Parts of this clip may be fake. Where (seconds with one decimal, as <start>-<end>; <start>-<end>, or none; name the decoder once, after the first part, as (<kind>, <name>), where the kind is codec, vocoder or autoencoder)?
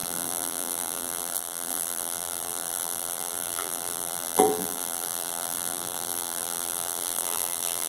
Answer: 0.0-7.9 (vocoder, BigVGAN v2)